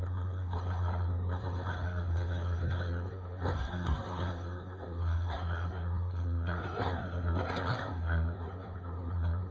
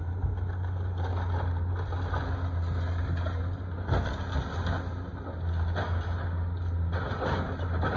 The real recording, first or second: second